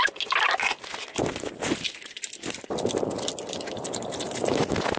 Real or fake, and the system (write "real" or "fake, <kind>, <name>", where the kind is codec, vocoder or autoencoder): real